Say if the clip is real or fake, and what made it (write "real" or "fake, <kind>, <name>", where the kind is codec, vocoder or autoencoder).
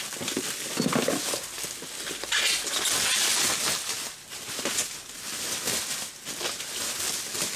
real